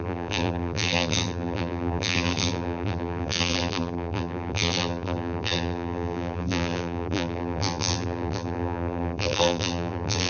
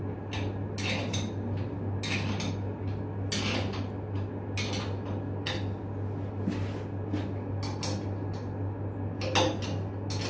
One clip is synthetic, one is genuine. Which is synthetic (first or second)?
first